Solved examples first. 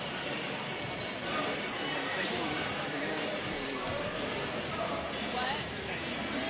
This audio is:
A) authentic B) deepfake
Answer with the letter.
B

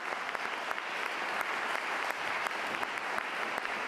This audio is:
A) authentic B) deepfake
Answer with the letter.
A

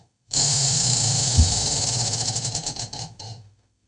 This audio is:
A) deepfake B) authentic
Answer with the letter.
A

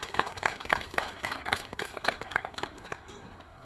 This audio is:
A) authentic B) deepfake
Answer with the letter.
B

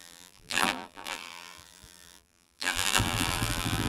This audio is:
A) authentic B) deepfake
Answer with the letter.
B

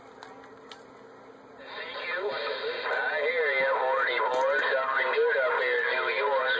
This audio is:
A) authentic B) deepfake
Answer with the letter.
A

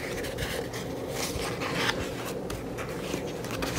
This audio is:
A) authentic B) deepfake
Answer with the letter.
A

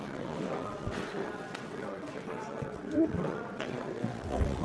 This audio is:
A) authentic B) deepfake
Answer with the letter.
B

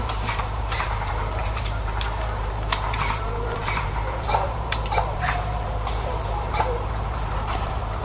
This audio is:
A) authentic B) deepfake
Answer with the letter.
B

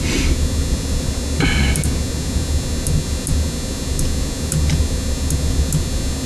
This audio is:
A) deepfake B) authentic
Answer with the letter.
B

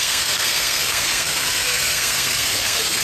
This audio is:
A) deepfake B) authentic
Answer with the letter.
A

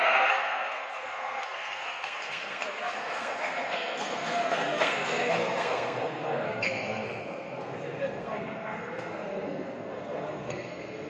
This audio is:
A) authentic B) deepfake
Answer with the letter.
B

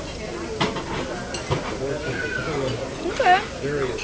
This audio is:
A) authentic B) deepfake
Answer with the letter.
A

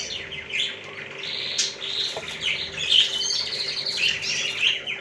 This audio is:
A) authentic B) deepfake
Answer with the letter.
A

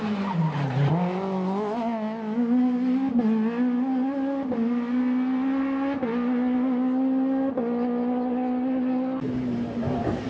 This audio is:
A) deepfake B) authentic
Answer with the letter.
B